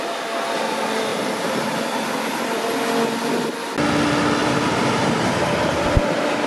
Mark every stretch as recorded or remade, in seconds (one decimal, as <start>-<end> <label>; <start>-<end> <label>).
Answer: 0.0-1.1 recorded; 1.1-1.8 remade; 1.8-4.4 recorded; 4.4-5.8 remade; 5.8-6.5 recorded